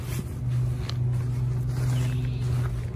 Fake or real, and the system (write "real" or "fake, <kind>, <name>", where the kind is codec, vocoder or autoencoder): real